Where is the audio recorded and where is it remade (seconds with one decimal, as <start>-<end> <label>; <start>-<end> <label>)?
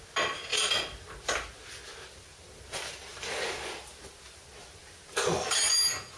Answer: 0.0-6.2 recorded